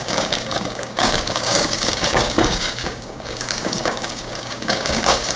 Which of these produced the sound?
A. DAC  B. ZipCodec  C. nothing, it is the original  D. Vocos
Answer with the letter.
A